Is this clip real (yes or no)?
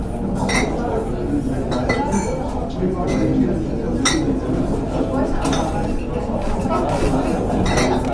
yes